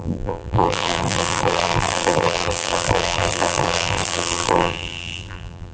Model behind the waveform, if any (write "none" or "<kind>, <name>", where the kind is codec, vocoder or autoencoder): vocoder, BigVGAN v2